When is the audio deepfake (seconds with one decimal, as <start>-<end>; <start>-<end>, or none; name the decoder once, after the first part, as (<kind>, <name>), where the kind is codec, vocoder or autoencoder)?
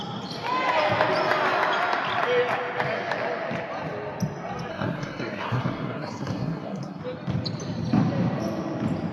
4.7-7.0 (codec, SNAC)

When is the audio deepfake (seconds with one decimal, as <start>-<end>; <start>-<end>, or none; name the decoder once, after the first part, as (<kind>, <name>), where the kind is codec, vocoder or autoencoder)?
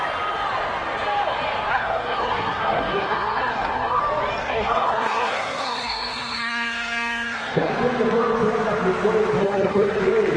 1.7-4.0 (codec, SNAC); 4.4-7.7; 9.4-10.0